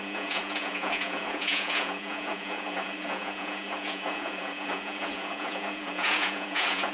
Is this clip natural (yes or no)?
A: no